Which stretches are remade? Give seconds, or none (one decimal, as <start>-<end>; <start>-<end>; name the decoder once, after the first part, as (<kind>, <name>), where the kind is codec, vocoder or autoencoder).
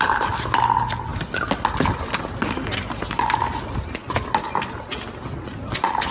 none